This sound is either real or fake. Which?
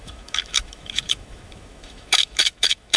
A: fake